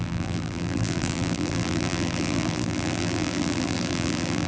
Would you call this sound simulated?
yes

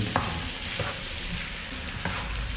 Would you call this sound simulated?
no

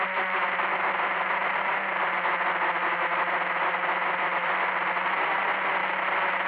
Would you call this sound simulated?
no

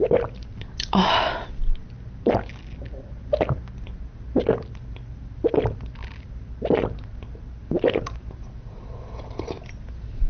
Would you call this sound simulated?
no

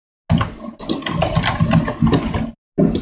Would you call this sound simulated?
no